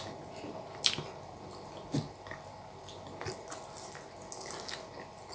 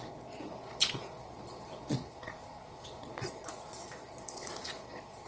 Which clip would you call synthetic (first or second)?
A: second